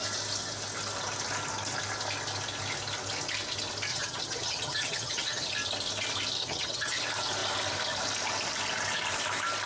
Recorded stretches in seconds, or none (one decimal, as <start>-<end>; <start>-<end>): 0.0-3.9; 5.5-6.4; 7.0-9.7